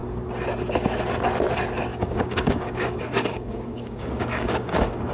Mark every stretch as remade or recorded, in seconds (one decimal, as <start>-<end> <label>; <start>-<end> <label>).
0.0-1.9 recorded; 1.9-5.1 remade